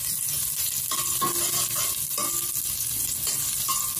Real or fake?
real